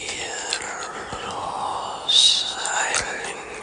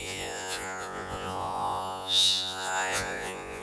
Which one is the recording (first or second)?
first